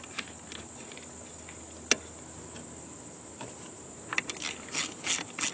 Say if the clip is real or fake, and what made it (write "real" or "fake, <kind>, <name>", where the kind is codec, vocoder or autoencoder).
real